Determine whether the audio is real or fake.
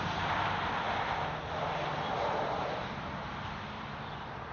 real